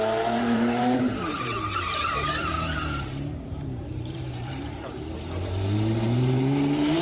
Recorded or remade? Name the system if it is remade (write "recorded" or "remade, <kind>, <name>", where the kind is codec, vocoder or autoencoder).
remade, vocoder, BigVGAN v2